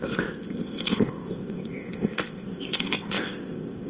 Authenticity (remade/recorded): remade